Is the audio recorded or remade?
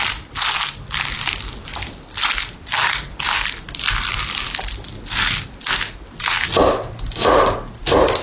recorded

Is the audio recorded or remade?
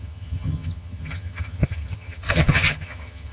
remade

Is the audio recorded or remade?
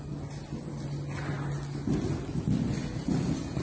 recorded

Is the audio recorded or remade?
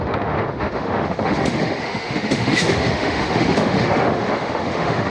remade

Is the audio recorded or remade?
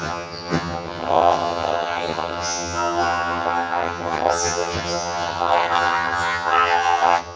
remade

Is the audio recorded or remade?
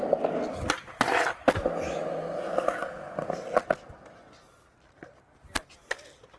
recorded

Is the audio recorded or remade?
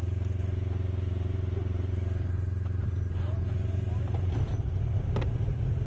recorded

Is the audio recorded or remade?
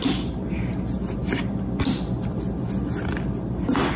recorded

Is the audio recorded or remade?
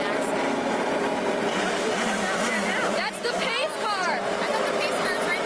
recorded